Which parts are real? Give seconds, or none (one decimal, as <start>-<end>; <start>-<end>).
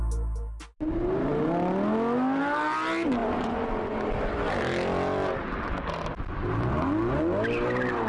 0.0-3.2; 3.7-8.1